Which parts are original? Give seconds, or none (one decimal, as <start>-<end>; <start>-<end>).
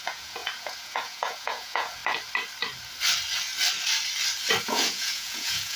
2.0-4.6